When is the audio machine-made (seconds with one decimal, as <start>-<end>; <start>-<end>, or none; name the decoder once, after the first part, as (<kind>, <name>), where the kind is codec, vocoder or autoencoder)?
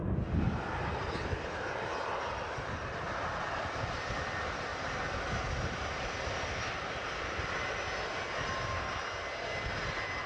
0.0-4.7 (vocoder, BigVGAN v2); 9.8-10.3